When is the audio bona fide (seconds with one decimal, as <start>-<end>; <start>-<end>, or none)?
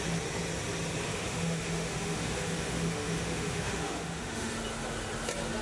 0.0-1.1; 4.5-5.6